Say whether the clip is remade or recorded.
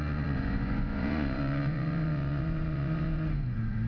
remade